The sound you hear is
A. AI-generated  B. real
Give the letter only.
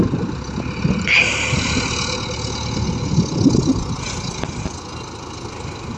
B